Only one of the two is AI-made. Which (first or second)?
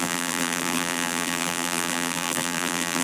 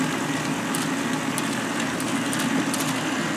first